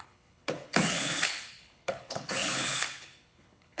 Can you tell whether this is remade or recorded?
remade